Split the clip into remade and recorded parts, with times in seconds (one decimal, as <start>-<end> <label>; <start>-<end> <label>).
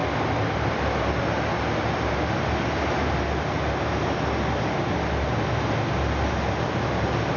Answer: 0.0-7.4 recorded